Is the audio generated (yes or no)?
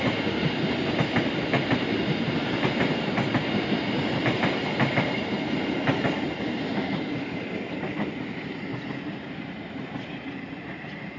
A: no